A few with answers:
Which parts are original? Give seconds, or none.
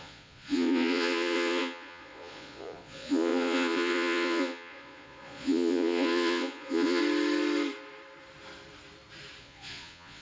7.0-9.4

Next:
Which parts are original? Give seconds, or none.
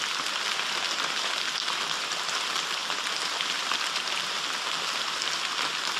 0.0-6.0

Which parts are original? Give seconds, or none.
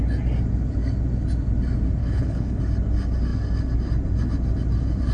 0.0-2.0; 2.6-5.1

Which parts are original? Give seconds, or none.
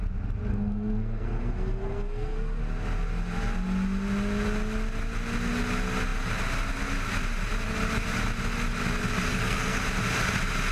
0.0-0.5; 2.6-9.3; 9.8-10.7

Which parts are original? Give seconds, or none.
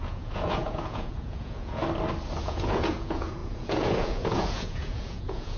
1.8-2.4